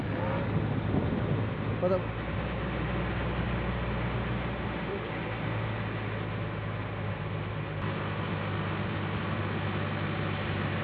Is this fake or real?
real